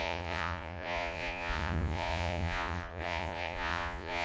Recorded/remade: remade